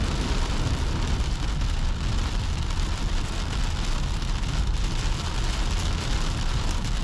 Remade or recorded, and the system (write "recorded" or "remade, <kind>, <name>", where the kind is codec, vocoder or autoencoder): recorded